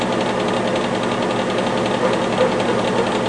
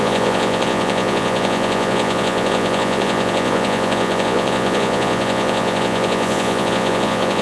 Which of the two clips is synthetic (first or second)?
second